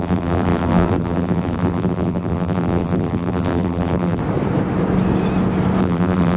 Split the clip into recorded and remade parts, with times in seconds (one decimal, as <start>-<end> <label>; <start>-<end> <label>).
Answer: 0.0-4.2 remade; 4.2-5.8 recorded; 5.8-6.4 remade